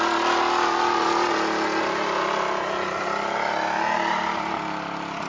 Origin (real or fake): real